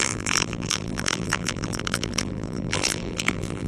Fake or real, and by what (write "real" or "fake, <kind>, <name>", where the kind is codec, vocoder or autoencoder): fake, vocoder, BigVGAN v2